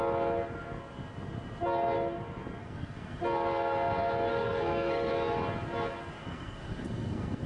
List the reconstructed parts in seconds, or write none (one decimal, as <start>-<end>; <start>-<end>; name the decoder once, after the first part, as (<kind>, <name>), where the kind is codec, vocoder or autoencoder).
2.6-3.2 (codec, SNAC); 4.3-5.1; 6.2-7.5